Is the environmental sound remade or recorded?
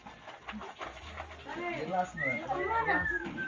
recorded